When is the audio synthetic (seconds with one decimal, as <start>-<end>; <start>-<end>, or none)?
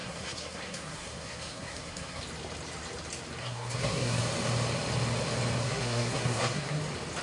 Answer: 0.0-2.2; 3.4-4.2; 5.6-6.8